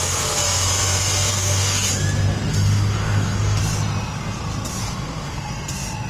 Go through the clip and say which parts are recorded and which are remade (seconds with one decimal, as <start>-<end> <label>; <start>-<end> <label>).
0.0-1.3 recorded; 1.3-1.9 remade; 1.9-2.5 recorded; 2.5-3.6 remade; 3.6-4.8 recorded; 4.8-5.5 remade; 5.5-6.1 recorded